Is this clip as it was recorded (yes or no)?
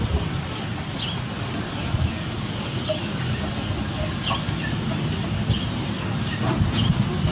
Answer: yes